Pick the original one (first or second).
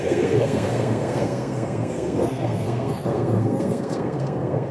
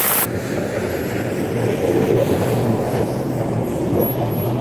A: second